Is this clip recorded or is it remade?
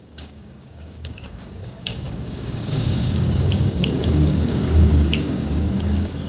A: remade